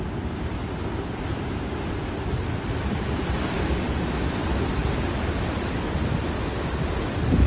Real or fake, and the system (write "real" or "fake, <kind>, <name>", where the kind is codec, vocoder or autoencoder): real